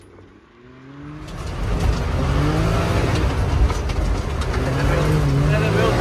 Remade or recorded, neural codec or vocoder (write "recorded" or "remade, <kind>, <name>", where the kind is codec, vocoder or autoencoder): recorded